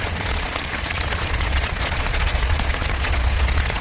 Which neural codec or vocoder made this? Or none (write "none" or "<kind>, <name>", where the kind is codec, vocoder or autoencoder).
vocoder, Vocos